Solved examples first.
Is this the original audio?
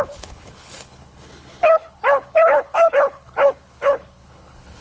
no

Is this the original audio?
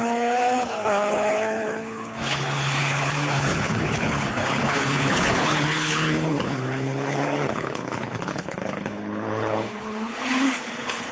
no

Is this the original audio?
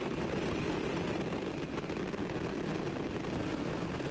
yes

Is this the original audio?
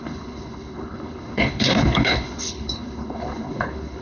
no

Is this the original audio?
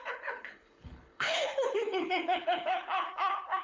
no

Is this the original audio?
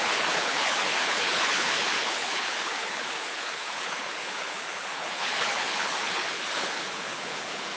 no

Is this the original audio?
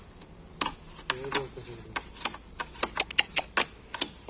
yes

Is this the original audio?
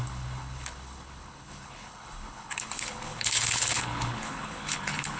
no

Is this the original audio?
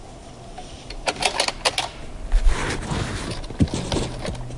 yes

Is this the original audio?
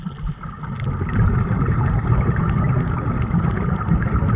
yes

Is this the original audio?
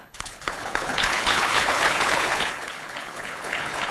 no